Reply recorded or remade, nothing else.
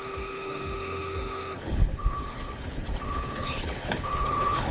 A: remade